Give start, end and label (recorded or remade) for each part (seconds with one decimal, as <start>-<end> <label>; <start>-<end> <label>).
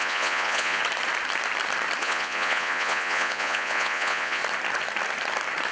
0.0-0.8 remade; 0.8-2.0 recorded; 2.0-4.4 remade; 4.4-5.7 recorded